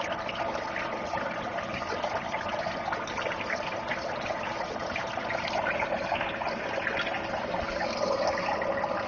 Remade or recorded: recorded